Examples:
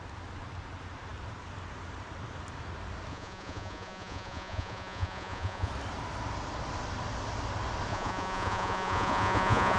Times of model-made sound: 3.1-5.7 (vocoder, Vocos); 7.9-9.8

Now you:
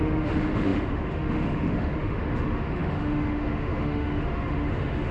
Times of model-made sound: 0.0-5.1 (autoencoder, DAC-VAE)

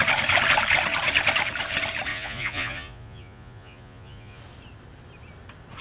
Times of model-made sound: 2.1-4.4 (vocoder, Vocos)

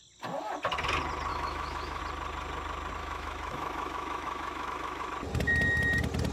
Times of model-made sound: 1.3-2.0 (autoencoder, DAC-VAE); 3.0-5.1

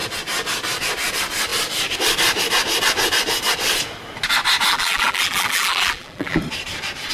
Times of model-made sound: 4.7-6.4 (vocoder, BigVGAN v2)

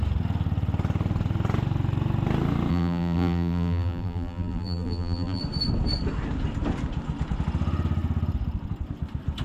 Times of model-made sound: 2.7-5.4 (vocoder, BigVGAN v2)

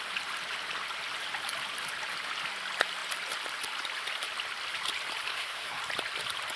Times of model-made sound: 5.3-5.8 (codec, SNAC)